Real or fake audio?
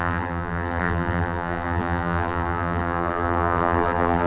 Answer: fake